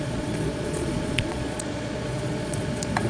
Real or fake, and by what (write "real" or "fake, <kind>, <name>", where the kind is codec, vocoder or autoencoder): fake, vocoder, Vocos